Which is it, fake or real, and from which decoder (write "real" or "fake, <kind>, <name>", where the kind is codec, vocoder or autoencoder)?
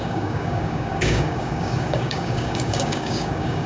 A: fake, codec, DAC